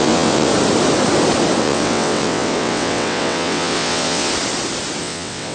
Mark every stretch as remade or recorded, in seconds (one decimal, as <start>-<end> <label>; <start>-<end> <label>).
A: 0.0-0.5 remade; 0.5-1.6 recorded; 1.6-4.3 remade; 4.3-5.0 recorded; 5.0-5.5 remade